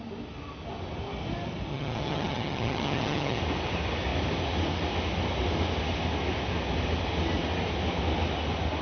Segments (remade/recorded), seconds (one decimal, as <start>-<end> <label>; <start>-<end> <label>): 0.0-1.7 recorded; 1.7-3.4 remade; 3.4-8.8 recorded